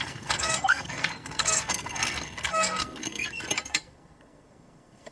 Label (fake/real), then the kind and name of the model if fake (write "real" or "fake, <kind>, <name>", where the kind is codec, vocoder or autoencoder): fake, codec, SNAC